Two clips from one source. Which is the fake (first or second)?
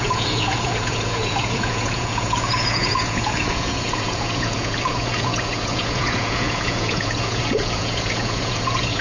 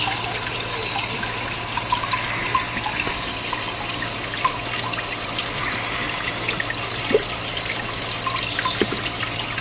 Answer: first